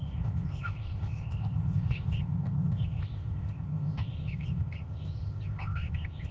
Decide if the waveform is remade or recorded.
remade